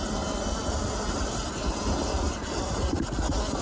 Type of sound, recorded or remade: recorded